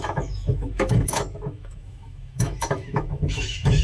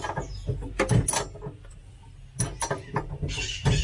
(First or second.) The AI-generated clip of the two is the first